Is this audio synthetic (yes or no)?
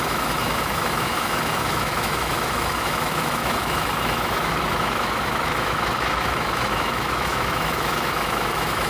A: yes